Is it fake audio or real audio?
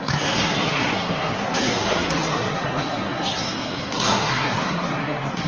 fake